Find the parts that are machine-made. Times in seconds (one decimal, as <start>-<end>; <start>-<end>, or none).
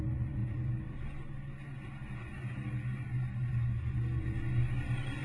none